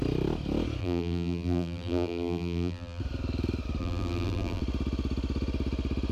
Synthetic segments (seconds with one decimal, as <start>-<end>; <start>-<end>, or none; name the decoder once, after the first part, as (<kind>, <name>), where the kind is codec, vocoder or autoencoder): 0.8-3.0 (vocoder, BigVGAN v2); 3.8-4.6